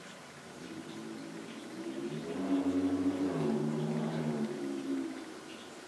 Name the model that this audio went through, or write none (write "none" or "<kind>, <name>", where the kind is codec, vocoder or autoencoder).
none